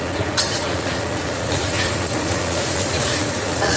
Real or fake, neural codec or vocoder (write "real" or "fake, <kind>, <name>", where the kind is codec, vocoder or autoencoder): fake, vocoder, Vocos